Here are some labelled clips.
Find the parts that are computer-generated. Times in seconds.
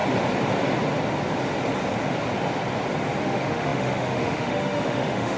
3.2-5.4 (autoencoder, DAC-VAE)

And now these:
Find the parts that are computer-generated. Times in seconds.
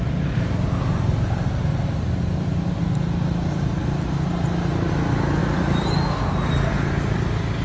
none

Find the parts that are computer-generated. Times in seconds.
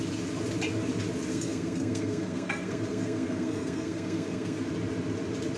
1.3-4.7 (codec, SNAC)